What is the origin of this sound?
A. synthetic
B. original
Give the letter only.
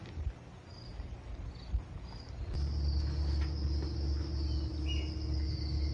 B